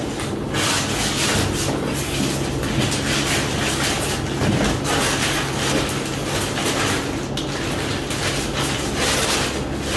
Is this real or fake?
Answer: real